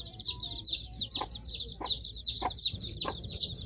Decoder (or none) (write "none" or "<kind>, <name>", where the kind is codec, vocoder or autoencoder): vocoder, BigVGAN v2